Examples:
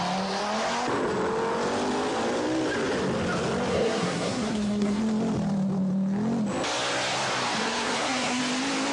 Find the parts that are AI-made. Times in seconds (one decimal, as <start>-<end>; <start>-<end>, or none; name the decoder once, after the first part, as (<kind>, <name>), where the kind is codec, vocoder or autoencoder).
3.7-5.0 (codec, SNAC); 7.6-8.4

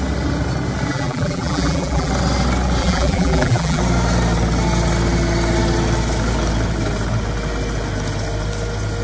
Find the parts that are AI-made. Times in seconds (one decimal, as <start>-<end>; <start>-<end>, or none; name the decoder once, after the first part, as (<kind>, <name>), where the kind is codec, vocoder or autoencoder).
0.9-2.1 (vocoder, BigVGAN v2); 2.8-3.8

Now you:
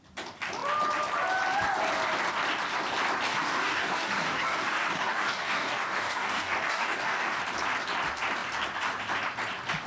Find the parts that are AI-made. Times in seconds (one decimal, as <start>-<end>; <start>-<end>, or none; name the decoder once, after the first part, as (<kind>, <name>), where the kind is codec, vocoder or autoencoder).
3.3-7.4 (codec, DAC)

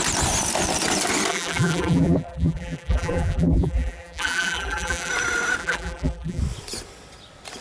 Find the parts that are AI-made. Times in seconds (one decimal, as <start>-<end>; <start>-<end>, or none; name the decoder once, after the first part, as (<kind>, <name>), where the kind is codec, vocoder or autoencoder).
1.3-5.1 (vocoder, BigVGAN v2); 5.6-6.4

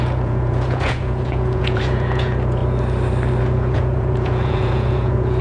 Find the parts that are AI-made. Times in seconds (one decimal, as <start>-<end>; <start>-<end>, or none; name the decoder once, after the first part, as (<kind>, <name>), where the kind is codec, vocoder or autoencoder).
0.0-2.6 (vocoder, Vocos); 3.4-5.4

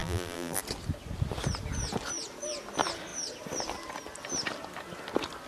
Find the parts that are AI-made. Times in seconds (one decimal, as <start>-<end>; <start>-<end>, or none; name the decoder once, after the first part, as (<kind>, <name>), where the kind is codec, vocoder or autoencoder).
0.0-0.6 (vocoder, BigVGAN v2)